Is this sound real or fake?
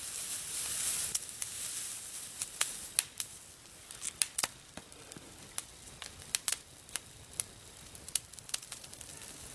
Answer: real